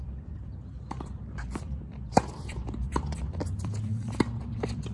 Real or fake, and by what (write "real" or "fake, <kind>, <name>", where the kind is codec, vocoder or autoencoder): fake, vocoder, BigVGAN v2